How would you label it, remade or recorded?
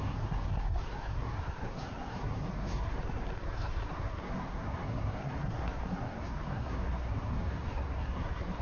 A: remade